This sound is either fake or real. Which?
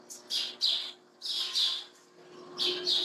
real